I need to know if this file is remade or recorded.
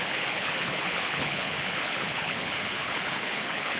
remade